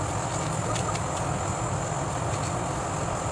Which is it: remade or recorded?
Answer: recorded